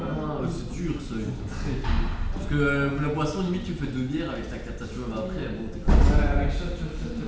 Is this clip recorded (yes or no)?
yes